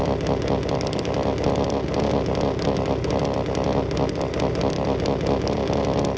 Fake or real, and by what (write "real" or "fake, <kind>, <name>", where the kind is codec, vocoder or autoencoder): real